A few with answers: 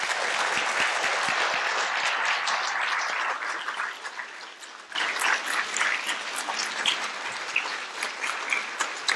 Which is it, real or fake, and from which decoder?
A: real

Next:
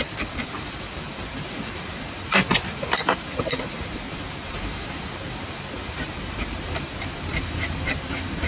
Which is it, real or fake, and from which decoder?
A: fake, vocoder, BigVGAN v2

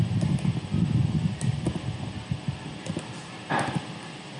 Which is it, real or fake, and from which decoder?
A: real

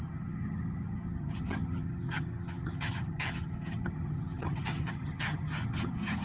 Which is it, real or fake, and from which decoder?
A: fake, vocoder, HiFi-GAN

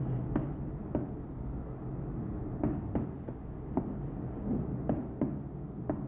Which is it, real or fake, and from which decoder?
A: real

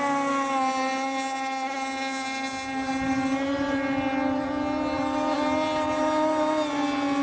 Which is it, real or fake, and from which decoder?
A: real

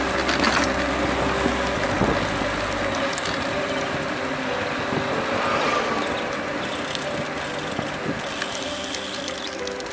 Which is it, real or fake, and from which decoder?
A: real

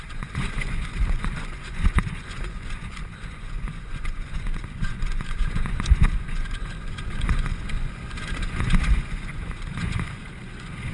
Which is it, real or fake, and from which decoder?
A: fake, vocoder, Vocos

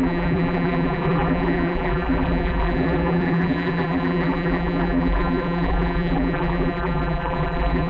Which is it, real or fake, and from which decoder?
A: fake, vocoder, BigVGAN v2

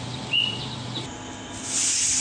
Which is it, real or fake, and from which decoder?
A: fake, vocoder, BigVGAN v2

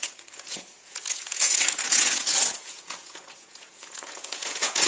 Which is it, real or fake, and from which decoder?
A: fake, vocoder, Vocos